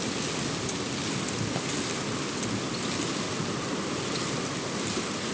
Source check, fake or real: real